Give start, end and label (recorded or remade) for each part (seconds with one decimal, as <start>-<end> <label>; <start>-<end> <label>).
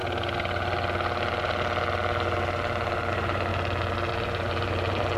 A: 0.0-3.1 recorded; 3.1-3.5 remade; 3.5-4.1 recorded; 4.1-5.2 remade